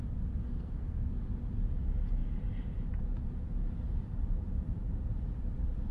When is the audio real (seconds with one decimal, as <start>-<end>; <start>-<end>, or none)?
0.0-0.4; 1.1-5.9